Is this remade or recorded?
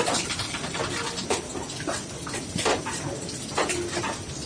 recorded